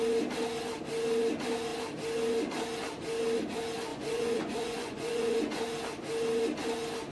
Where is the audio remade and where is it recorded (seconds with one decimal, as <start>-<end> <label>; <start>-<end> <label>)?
0.0-3.9 recorded; 3.9-5.6 remade; 5.6-7.1 recorded